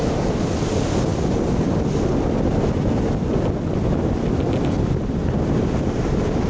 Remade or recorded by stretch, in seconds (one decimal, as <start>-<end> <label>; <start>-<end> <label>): 0.0-6.5 recorded